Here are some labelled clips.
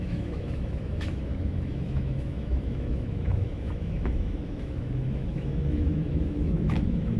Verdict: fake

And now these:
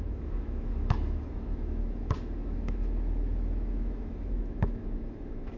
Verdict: fake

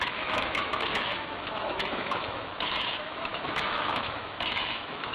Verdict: fake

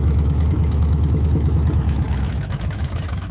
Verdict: fake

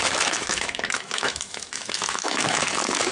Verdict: fake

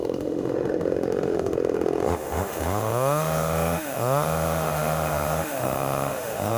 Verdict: fake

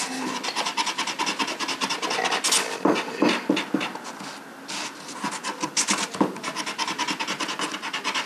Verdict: real